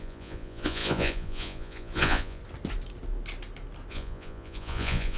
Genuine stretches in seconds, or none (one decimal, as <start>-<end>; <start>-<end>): 2.4-3.9